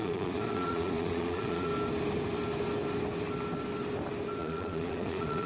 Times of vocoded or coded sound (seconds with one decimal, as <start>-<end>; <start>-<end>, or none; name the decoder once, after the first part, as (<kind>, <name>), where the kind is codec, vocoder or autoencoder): 0.0-1.7 (vocoder, Vocos); 4.4-5.5